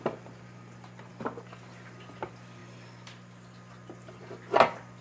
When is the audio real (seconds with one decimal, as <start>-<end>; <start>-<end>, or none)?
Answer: 0.0-5.0